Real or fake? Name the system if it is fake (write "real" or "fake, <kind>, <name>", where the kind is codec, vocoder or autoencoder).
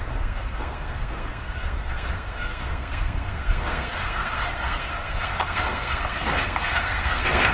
fake, codec, SNAC